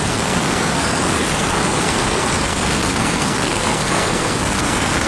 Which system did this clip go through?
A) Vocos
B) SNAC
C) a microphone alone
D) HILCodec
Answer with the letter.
B